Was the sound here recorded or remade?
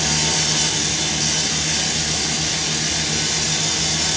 recorded